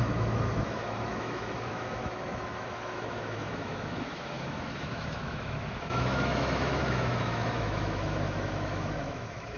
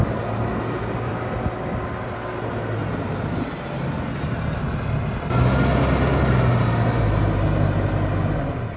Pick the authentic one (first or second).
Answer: second